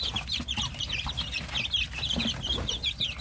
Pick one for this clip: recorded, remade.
recorded